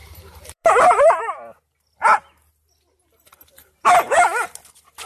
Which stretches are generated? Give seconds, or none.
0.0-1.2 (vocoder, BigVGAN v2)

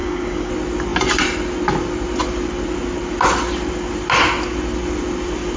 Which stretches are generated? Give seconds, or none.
0.0-0.5 (codec, DAC)